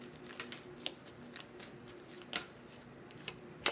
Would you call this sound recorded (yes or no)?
yes